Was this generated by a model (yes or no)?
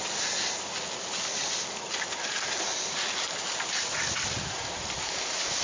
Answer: no